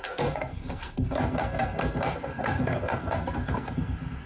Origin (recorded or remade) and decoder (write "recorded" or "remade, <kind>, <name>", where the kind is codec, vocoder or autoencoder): remade, codec, SNAC